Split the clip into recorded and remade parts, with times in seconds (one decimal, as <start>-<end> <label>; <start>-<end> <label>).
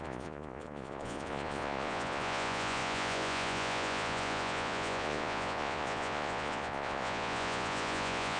0.0-8.4 remade